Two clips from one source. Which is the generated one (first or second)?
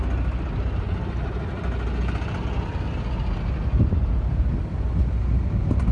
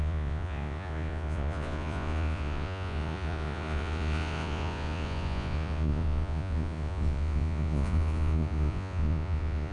second